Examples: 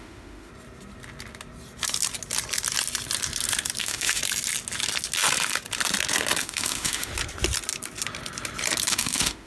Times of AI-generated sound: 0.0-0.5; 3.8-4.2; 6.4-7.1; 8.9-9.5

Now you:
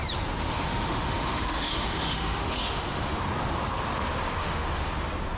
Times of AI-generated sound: 0.4-3.2; 4.4-4.9

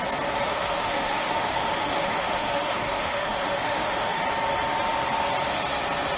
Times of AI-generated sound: 0.5-4.2

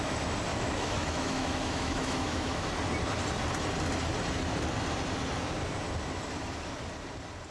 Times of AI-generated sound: 0.5-2.7

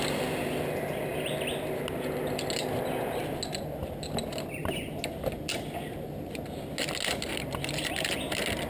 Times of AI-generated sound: none

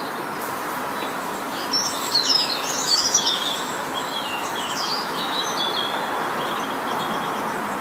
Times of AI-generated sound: 1.8-5.6

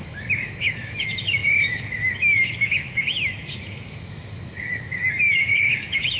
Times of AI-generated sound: 0.0-6.2

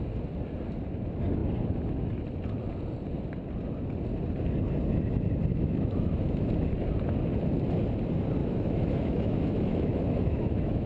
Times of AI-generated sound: 5.5-6.5; 8.4-10.9